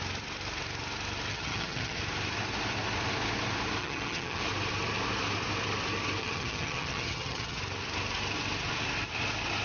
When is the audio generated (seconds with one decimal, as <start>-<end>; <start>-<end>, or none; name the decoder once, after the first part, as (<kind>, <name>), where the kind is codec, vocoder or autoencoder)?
1.3-2.0 (vocoder, HiFi-GAN); 3.8-4.4; 6.2-7.6

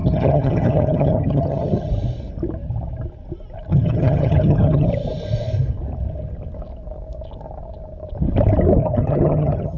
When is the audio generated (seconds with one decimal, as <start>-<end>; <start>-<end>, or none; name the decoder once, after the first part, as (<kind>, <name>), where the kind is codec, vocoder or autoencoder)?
0.0-1.9 (vocoder, HiFi-GAN); 3.7-4.9; 8.8-9.8

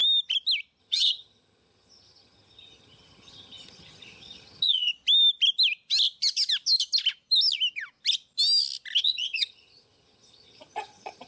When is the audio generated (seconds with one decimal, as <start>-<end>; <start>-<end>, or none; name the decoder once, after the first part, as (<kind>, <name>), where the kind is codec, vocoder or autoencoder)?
0.8-4.9 (vocoder, HiFi-GAN); 9.0-11.3